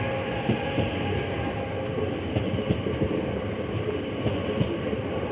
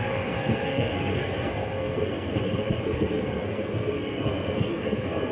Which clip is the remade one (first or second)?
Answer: second